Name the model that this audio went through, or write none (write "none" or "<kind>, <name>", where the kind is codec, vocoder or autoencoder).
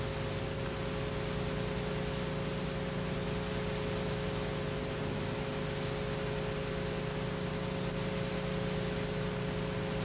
none